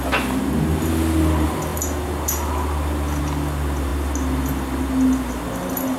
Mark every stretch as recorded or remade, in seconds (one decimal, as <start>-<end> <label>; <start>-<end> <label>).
0.0-6.0 recorded